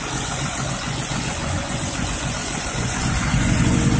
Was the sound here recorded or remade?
remade